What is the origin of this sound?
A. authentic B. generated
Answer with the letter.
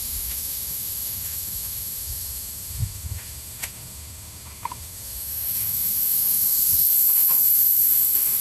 B